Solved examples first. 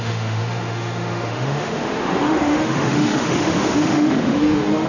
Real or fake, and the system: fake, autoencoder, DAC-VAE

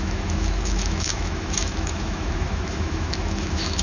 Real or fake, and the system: fake, autoencoder, DAC-VAE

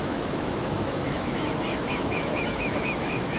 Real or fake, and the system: fake, autoencoder, DAC-VAE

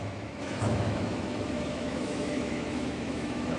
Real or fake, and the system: fake, autoencoder, DAC-VAE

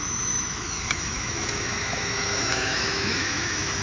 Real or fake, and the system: fake, autoencoder, DAC-VAE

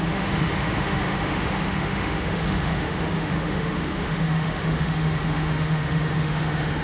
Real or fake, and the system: fake, autoencoder, DAC-VAE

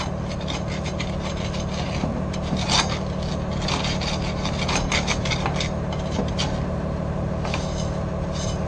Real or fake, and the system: real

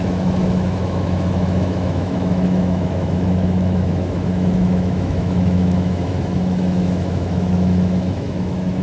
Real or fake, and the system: fake, autoencoder, DAC-VAE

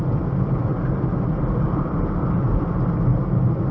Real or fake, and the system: real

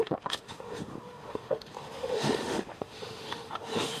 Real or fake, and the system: fake, autoencoder, DAC-VAE